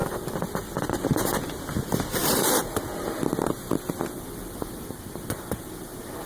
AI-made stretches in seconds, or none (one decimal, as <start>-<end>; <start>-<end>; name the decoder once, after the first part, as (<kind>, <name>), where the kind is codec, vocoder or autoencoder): none

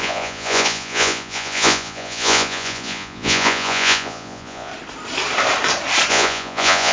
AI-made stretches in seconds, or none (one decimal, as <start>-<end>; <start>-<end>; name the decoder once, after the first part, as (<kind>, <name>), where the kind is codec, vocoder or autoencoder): 0.0-4.7 (vocoder, Vocos); 6.1-6.9

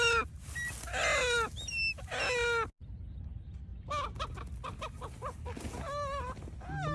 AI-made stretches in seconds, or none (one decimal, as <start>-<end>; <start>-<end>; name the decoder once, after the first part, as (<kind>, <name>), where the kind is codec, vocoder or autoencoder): none